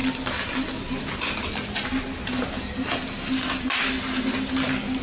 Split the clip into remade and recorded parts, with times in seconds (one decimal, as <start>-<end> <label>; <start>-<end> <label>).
0.0-5.0 recorded

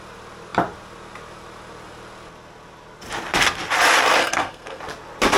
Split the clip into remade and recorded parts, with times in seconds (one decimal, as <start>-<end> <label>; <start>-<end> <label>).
0.0-4.2 recorded; 4.2-4.8 remade; 4.8-5.4 recorded

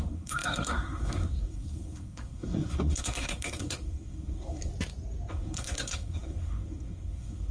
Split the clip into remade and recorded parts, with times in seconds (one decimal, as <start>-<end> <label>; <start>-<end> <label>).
0.0-4.7 remade; 4.7-5.3 recorded; 5.3-7.5 remade

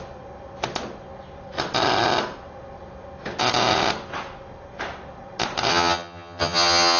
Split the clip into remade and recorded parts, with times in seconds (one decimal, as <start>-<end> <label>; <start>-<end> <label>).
0.0-5.7 recorded; 5.7-7.0 remade

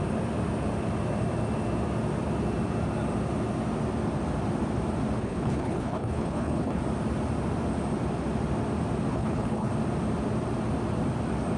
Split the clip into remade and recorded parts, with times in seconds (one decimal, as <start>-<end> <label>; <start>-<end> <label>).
0.0-5.2 recorded; 5.2-6.8 remade; 6.8-9.1 recorded; 9.1-9.7 remade; 9.7-11.6 recorded

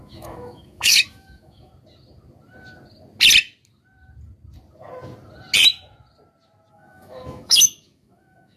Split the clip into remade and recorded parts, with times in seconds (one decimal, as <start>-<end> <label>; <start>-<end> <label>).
0.0-1.7 remade; 1.7-6.7 recorded; 6.7-8.6 remade

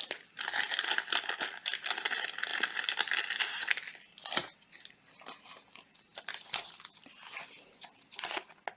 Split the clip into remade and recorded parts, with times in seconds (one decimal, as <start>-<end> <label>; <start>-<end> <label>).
0.0-8.8 recorded